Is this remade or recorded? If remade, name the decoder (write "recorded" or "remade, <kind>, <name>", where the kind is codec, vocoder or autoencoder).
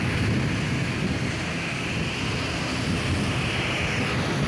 recorded